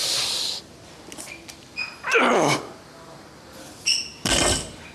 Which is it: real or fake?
real